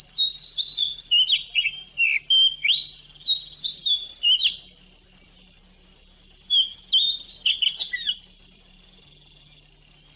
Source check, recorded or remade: recorded